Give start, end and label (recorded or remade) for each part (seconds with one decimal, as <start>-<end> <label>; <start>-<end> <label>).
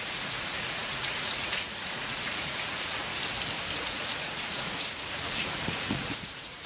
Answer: 0.0-3.0 remade; 3.0-3.8 recorded; 3.8-6.7 remade